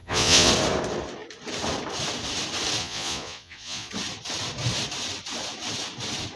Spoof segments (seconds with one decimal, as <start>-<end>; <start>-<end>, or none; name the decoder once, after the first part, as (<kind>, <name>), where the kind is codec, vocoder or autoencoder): 0.0-0.5 (vocoder, Vocos); 2.8-3.9